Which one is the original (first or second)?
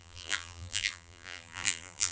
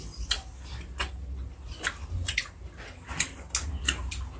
second